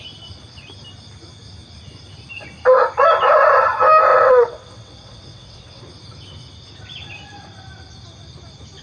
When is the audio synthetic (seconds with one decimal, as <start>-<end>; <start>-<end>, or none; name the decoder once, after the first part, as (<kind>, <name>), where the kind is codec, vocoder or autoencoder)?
4.1-5.8 (vocoder, WaveNeXt)